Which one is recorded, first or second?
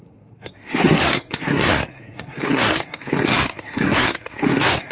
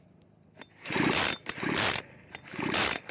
second